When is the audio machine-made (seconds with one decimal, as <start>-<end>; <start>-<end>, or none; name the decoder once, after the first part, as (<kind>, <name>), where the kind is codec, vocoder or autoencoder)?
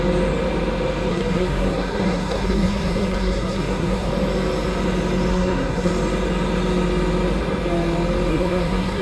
1.1-4.1 (codec, SNAC); 5.3-5.9; 8.3-9.0